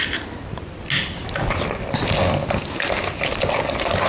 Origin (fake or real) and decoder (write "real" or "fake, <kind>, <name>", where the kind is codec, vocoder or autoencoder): real